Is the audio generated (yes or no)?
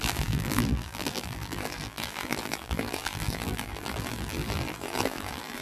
yes